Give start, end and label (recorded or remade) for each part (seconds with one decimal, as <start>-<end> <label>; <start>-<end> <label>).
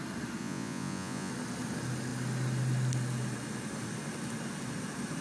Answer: 0.0-0.4 recorded; 0.4-1.3 remade; 1.3-5.2 recorded